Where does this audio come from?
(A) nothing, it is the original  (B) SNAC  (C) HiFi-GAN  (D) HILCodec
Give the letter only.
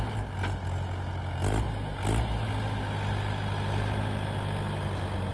A